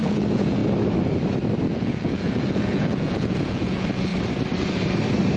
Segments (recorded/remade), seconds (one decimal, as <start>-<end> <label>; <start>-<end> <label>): 0.0-0.6 remade; 0.6-1.7 recorded; 1.7-4.1 remade; 4.1-5.4 recorded